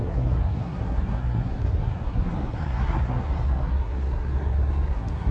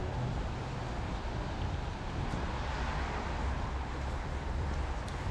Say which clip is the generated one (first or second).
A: first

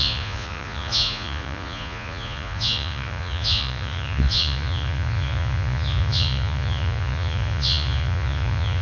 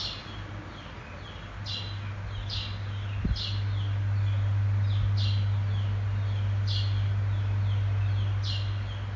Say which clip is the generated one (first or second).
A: first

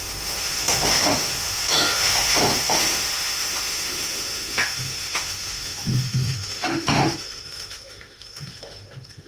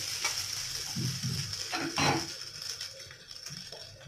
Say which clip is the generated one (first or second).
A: first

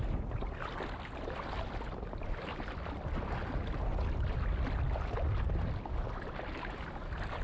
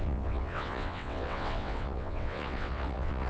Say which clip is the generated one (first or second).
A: second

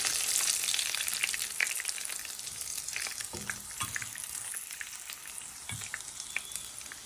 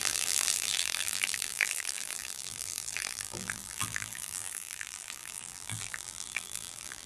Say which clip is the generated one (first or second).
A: second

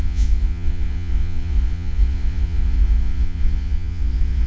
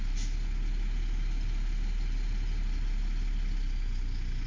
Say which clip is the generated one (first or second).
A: first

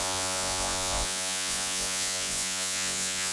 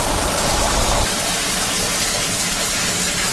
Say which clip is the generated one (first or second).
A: first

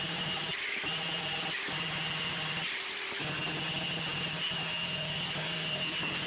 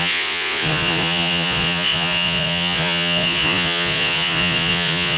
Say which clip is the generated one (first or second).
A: second